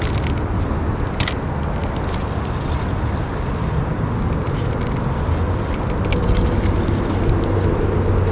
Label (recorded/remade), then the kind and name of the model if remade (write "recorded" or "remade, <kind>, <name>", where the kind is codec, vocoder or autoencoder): recorded